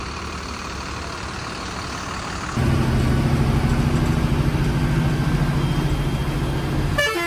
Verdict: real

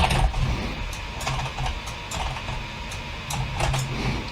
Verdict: real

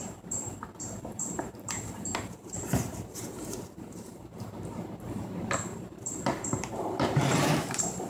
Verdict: fake